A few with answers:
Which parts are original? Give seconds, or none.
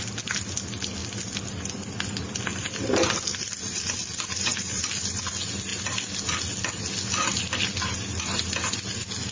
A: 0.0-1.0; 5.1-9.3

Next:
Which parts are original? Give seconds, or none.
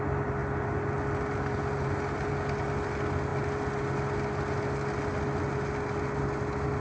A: 0.0-6.8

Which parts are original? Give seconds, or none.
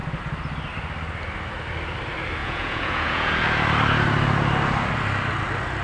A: 0.0-2.4; 3.4-5.8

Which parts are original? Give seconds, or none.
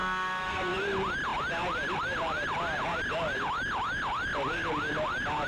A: 0.6-5.5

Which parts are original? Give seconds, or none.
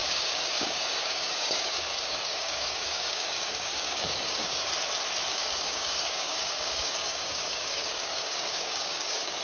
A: 4.7-5.3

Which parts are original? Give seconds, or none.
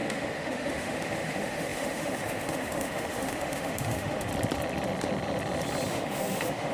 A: 4.3-5.9